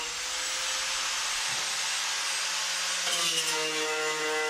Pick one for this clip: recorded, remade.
recorded